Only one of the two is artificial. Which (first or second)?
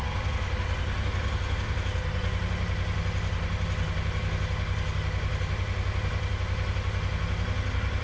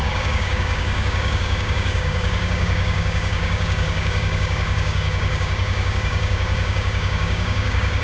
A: second